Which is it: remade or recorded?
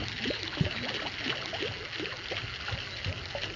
recorded